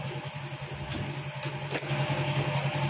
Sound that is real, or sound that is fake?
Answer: real